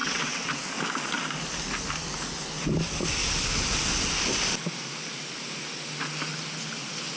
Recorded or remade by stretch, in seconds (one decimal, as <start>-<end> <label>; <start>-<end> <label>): 0.0-0.7 remade; 0.7-7.2 recorded